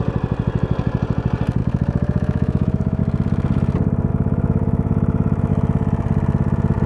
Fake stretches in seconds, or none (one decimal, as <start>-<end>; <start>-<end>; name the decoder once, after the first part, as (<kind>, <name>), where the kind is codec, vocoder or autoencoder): 1.6-3.0 (autoencoder, DAC-VAE); 4.1-5.5